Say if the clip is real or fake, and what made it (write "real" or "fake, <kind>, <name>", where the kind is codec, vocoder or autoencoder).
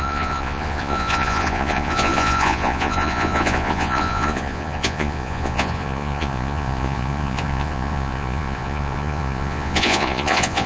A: fake, vocoder, Vocos